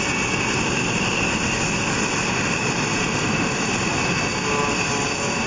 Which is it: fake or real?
real